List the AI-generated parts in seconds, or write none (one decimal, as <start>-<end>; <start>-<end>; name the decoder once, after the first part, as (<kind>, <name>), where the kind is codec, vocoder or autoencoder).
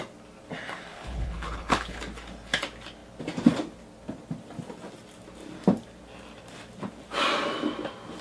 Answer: 0.9-2.0 (codec, HILCodec)